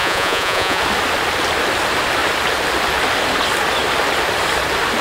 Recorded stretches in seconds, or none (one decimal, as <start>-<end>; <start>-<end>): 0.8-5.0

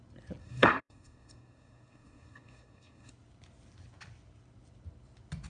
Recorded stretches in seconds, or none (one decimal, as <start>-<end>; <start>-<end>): 0.0-0.4; 3.1-5.5

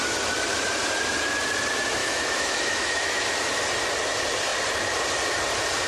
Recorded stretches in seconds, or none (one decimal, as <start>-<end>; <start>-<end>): 0.0-2.0; 3.2-5.9

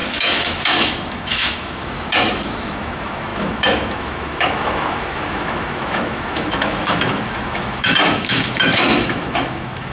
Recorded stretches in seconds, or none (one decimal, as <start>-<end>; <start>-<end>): none

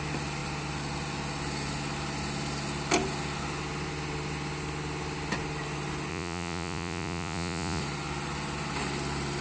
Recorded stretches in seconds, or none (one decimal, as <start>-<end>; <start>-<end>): 0.0-6.1; 7.8-9.4

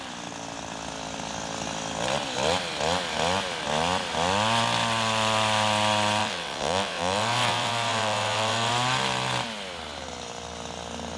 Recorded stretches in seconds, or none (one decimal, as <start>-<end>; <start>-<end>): 0.0-6.2; 8.7-11.2

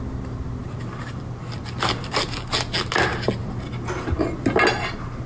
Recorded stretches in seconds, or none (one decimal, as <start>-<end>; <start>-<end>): 0.0-0.6; 2.6-5.3

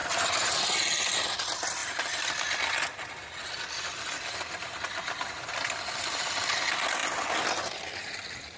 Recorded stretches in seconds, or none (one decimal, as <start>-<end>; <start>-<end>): 0.5-8.6